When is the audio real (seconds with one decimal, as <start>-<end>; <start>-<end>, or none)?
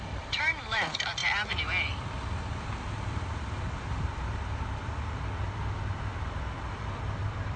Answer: 1.2-2.6